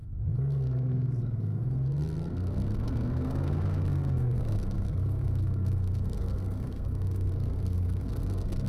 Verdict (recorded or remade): remade